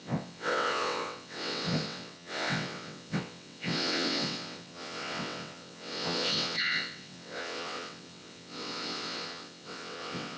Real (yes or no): no